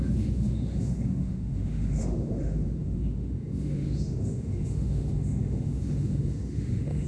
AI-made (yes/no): yes